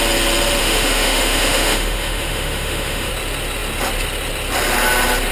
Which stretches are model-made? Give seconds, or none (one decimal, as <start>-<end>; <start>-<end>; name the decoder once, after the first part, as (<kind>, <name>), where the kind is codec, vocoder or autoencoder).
0.6-3.1 (autoencoder, DAC-VAE)